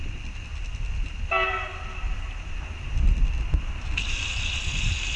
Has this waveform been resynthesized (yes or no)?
no